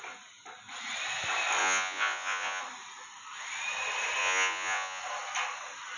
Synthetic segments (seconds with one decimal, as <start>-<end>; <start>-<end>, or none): 1.6-2.6; 4.2-5.0